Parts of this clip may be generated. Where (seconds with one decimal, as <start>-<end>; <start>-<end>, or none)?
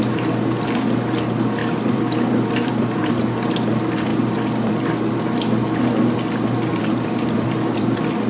1.6-3.1; 6.7-8.3